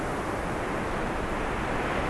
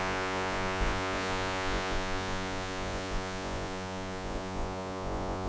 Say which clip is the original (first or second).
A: first